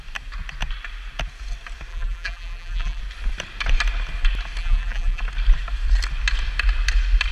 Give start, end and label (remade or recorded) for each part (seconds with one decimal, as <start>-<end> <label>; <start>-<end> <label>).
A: 0.0-1.9 recorded; 1.9-3.0 remade; 3.0-4.6 recorded; 4.6-5.2 remade; 5.2-7.3 recorded